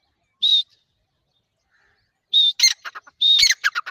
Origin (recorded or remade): recorded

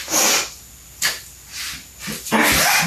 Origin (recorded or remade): recorded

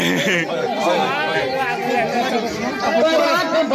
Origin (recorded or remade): recorded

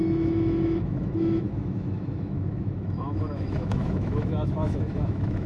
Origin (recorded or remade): remade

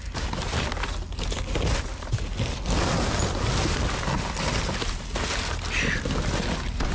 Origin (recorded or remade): recorded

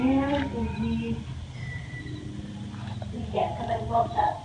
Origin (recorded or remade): recorded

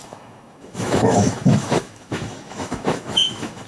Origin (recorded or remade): remade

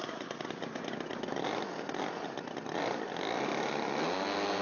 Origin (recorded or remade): recorded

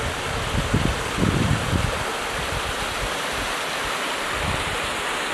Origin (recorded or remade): recorded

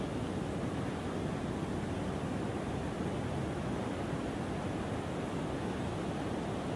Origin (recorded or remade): recorded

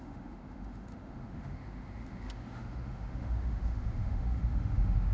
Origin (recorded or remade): remade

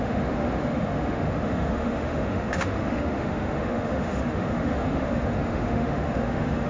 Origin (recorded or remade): remade